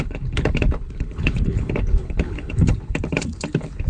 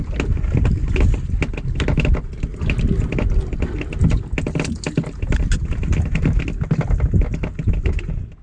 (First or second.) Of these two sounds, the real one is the second